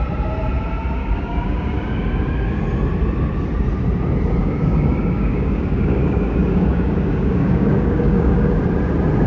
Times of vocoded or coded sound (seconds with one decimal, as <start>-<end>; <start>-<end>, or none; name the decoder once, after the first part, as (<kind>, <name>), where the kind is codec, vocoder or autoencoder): 1.0-2.6 (codec, DAC); 4.4-8.6

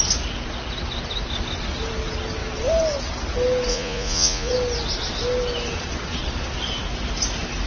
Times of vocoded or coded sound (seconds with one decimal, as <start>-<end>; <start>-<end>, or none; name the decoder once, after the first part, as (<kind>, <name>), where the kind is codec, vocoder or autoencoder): 3.7-4.5 (vocoder, Vocos)

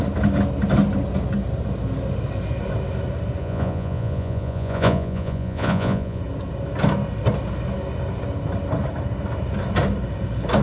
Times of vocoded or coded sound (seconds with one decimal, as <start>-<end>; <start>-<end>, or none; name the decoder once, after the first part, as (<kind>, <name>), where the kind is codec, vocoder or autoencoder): 3.4-6.2 (vocoder, Vocos)

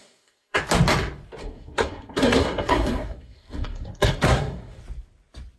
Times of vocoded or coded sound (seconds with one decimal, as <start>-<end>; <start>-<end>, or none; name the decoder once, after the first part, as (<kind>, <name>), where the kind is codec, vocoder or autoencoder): 0.0-0.6 (codec, SNAC); 1.4-4.8